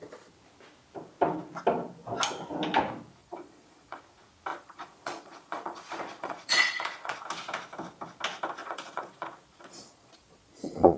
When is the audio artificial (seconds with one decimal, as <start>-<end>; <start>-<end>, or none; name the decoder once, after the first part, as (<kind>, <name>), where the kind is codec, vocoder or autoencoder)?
3.2-4.0 (vocoder, Vocos); 4.5-7.2; 8.6-11.0